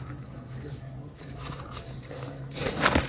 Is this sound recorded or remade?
recorded